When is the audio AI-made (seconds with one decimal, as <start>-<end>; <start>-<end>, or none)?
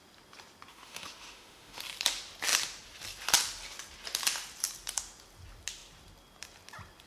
0.7-1.8